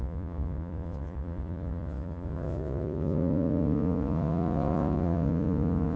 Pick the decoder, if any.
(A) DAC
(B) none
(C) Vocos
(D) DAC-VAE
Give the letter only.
C